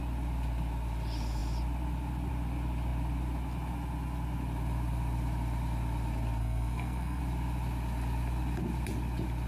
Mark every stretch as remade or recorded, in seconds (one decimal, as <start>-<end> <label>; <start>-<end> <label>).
0.0-6.4 recorded; 6.4-7.2 remade; 7.2-9.5 recorded